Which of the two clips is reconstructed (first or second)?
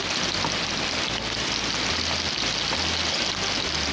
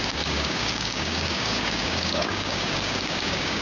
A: second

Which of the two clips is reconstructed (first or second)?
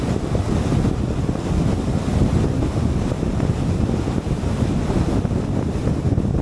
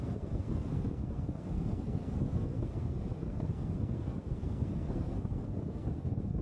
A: second